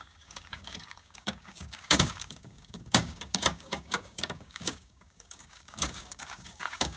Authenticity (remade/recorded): remade